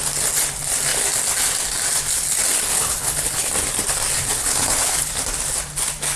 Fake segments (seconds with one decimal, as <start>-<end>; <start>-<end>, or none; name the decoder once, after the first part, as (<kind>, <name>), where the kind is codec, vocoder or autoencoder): 2.7-3.5 (codec, HILCodec); 4.4-5.1